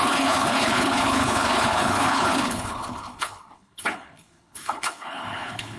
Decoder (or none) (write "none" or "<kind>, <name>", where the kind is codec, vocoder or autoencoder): codec, HILCodec